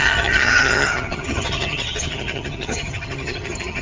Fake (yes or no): yes